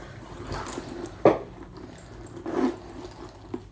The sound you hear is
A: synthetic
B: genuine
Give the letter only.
B